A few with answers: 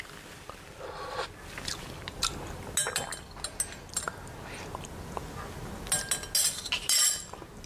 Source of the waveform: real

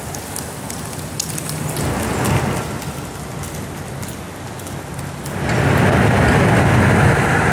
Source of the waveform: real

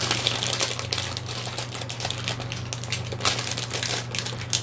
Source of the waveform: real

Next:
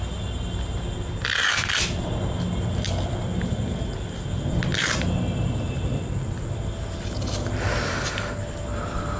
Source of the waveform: real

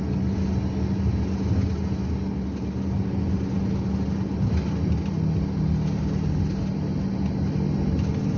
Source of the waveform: real